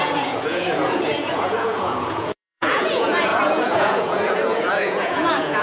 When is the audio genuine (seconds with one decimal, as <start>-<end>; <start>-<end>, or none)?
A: none